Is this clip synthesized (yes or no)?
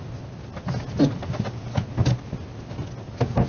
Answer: no